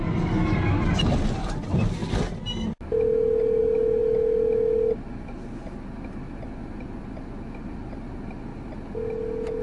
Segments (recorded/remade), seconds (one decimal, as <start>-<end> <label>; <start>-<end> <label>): 0.0-9.6 recorded